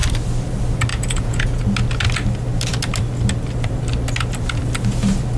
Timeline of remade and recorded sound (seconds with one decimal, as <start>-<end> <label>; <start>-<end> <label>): 0.0-0.9 recorded; 0.9-1.6 remade; 1.6-5.4 recorded